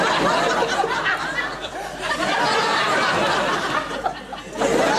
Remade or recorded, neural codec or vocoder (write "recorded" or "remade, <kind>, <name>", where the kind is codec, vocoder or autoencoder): recorded